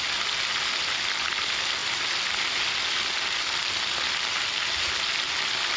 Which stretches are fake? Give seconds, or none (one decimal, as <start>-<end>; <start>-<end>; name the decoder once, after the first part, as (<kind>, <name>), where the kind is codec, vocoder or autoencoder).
none